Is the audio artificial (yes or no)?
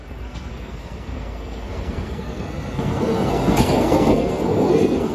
yes